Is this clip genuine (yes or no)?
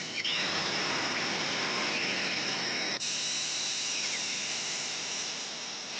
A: yes